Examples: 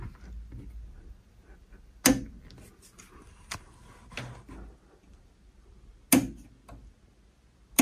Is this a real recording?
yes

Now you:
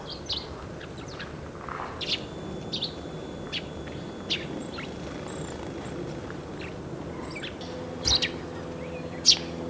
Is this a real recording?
yes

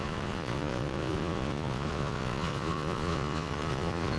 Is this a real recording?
no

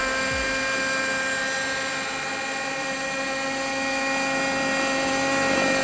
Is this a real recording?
yes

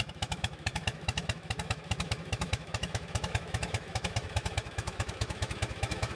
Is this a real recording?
no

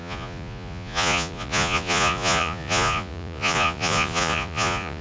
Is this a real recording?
no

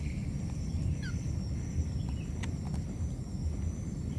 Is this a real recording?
yes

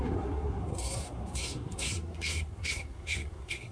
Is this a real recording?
no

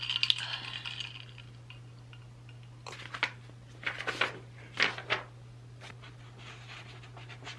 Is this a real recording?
yes